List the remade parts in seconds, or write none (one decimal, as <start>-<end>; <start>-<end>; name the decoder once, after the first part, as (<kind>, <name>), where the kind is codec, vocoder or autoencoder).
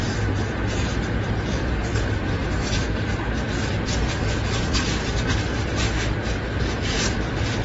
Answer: none